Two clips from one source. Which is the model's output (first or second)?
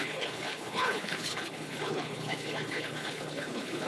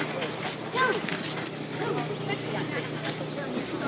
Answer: first